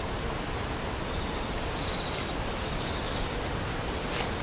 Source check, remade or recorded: recorded